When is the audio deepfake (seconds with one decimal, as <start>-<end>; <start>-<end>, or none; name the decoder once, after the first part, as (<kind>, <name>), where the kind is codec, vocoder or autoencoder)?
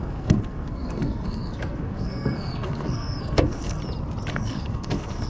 0.0-3.8 (codec, SNAC); 4.3-5.3